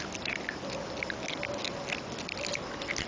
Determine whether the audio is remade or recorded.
recorded